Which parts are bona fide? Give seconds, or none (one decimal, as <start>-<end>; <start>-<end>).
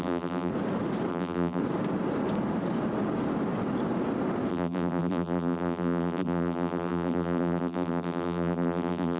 0.5-1.1; 1.6-4.5